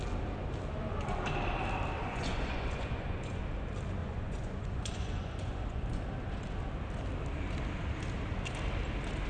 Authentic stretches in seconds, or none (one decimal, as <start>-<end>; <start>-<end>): 0.0-2.0; 3.4-4.0; 6.0-9.3